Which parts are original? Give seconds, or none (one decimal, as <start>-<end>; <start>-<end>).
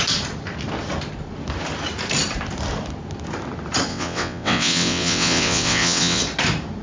0.0-3.9; 6.2-6.8